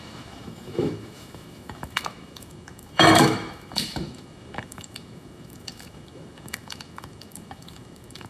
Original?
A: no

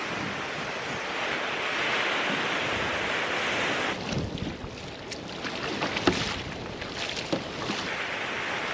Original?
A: yes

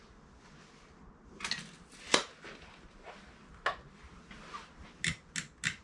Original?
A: yes